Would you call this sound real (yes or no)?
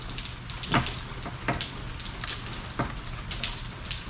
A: yes